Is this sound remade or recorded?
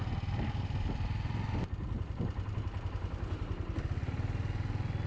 recorded